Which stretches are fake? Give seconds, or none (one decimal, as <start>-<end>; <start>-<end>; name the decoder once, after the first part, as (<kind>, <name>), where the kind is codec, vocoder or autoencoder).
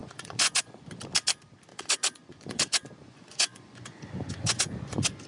0.0-1.0 (vocoder, Vocos); 1.7-5.3